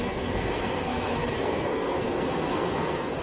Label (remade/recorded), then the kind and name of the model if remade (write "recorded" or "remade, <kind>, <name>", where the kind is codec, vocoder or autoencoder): remade, codec, SNAC